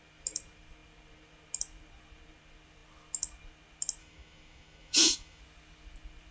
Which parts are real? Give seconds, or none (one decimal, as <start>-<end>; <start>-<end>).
0.0-4.0; 5.4-6.3